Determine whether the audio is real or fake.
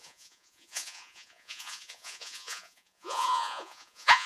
fake